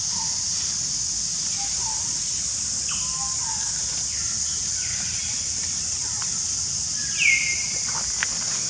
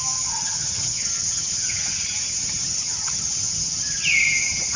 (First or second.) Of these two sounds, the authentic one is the first